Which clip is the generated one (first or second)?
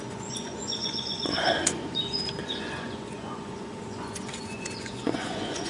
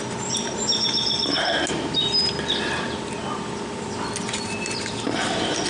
first